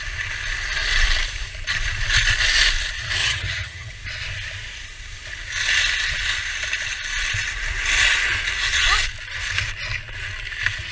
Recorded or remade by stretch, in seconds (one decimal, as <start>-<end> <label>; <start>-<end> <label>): 0.0-3.2 recorded; 3.2-3.9 remade; 3.9-10.9 recorded